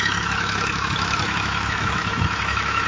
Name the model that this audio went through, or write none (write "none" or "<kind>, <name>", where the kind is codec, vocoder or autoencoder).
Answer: autoencoder, DAC-VAE